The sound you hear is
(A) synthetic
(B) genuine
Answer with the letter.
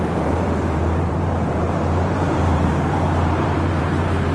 A